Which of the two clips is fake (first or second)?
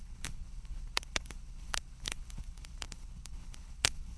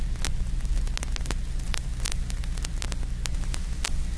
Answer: first